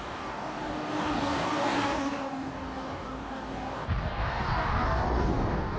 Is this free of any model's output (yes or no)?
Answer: no